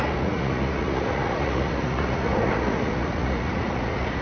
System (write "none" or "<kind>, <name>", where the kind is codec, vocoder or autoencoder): vocoder, Vocos